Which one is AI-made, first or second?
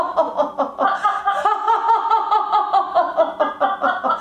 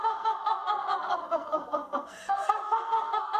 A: second